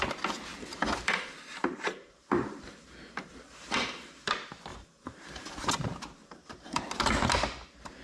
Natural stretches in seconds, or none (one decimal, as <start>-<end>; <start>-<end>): 0.0-0.5; 4.3-4.7; 5.7-6.2; 6.9-8.0

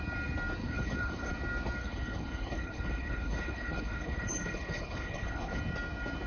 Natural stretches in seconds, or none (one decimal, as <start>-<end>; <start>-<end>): 0.0-0.6; 1.3-1.8; 5.6-6.3

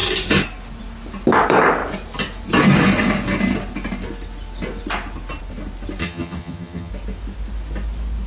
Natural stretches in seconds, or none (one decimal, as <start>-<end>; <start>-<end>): 0.0-6.0; 6.9-8.3

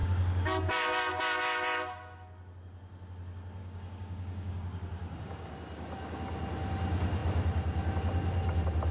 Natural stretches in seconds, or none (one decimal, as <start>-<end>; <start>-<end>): 1.1-3.6; 5.5-8.9